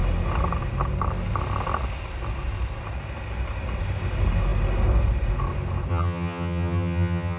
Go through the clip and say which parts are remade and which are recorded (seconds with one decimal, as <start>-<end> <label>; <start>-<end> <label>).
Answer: 0.0-5.9 recorded; 5.9-7.4 remade